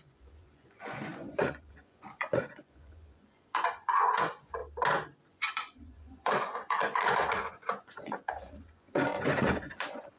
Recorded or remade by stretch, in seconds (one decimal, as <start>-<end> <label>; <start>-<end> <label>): 0.0-4.6 remade; 4.6-5.3 recorded; 5.3-10.2 remade